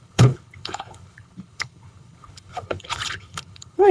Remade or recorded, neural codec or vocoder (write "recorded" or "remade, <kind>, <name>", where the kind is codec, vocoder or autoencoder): remade, codec, HILCodec